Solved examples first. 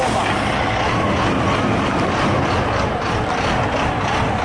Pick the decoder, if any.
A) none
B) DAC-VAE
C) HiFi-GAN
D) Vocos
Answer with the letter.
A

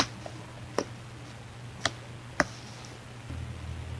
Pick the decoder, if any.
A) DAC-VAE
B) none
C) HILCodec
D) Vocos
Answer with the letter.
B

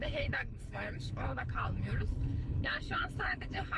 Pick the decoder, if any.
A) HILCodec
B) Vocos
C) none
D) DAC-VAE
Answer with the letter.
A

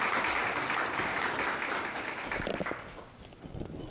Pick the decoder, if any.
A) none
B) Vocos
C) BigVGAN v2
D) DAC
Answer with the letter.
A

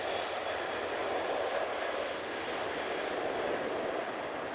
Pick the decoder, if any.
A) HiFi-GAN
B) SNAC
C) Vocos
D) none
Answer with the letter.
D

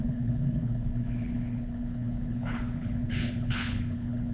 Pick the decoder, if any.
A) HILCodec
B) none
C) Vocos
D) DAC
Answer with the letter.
A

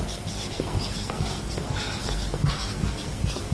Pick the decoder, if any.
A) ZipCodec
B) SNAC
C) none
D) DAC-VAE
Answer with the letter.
B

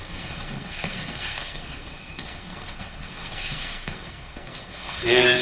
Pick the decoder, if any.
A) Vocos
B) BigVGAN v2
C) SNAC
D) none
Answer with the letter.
C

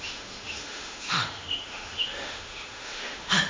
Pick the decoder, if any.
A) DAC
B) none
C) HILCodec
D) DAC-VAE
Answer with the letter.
D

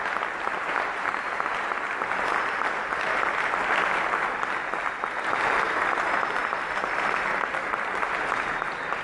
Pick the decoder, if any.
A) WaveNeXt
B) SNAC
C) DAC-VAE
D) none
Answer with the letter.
D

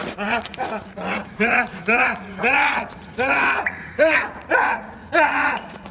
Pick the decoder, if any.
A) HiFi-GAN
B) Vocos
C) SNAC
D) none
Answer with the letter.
B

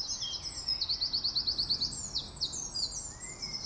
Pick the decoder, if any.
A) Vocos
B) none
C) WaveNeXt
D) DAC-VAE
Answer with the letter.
B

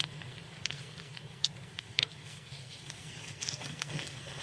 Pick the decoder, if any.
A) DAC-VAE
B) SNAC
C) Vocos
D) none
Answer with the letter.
B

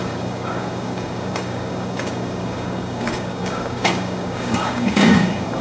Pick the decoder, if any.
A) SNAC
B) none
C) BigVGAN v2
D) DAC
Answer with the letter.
D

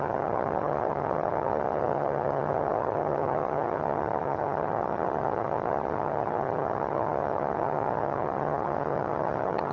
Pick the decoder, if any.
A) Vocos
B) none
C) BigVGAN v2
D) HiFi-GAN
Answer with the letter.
D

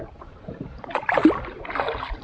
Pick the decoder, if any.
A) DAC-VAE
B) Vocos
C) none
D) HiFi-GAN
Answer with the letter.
C